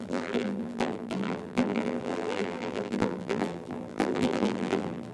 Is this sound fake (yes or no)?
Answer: yes